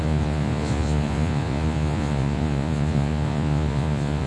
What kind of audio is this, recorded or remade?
remade